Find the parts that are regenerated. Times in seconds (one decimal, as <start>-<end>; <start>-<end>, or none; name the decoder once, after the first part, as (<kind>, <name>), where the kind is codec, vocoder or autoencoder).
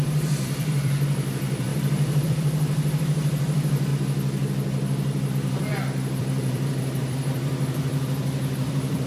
0.0-3.9 (vocoder, BigVGAN v2); 5.3-5.7; 6.2-9.1